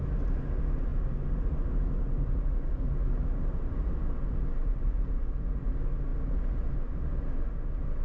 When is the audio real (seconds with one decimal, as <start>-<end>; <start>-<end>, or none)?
0.0-8.0